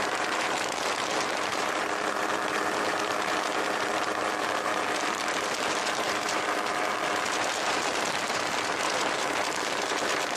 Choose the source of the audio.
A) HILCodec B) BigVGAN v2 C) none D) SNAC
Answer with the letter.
B